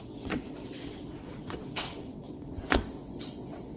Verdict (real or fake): fake